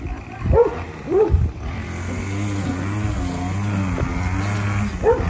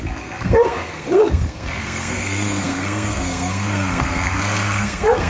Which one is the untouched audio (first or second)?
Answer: first